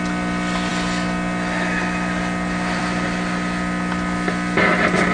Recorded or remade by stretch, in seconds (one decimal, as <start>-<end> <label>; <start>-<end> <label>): 0.0-5.1 recorded

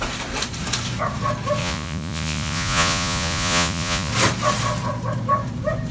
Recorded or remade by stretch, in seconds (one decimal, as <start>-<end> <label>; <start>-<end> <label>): 0.0-1.6 recorded; 1.6-4.1 remade; 4.1-5.9 recorded

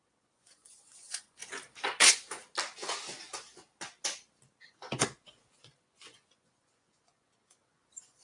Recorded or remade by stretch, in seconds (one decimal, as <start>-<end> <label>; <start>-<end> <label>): 0.0-1.4 remade; 1.4-2.0 recorded; 2.0-2.4 remade; 2.4-4.6 recorded; 4.6-8.2 remade